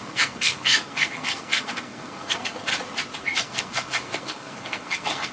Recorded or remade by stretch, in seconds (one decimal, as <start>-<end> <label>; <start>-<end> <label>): 0.0-2.7 remade; 2.7-3.2 recorded; 3.2-5.3 remade